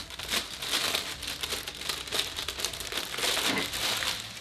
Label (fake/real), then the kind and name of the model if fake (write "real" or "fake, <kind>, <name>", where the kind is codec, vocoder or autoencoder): real